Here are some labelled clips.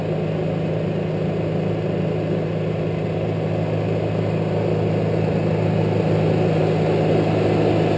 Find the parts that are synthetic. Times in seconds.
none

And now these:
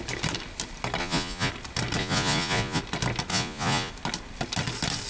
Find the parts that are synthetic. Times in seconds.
1.0-1.5 (vocoder, Vocos); 2.0-2.8; 3.3-3.9

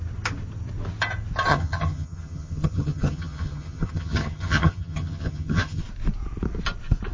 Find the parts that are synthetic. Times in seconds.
1.5-5.8 (vocoder, HiFi-GAN)

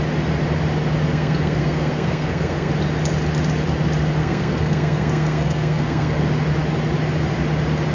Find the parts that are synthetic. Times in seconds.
1.0-2.7 (codec, SNAC); 4.2-6.2

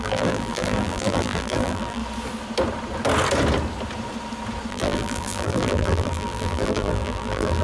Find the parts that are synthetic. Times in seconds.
0.0-2.0 (vocoder, BigVGAN v2); 4.7-7.6

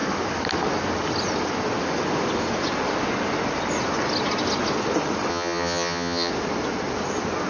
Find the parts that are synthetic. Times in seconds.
5.3-6.3 (vocoder, HiFi-GAN)

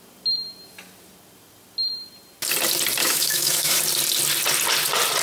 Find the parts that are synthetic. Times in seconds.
3.0-3.8 (autoencoder, DAC-VAE)

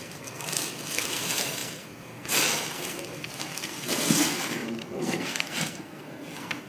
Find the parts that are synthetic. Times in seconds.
0.0-6.7 (codec, SNAC)